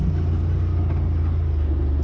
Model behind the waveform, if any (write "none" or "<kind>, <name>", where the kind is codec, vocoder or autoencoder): none